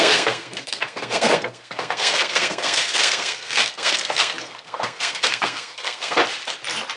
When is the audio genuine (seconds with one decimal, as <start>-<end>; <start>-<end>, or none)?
6.2-7.0